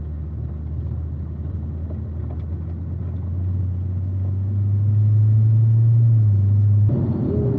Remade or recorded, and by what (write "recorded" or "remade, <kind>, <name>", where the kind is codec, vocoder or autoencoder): recorded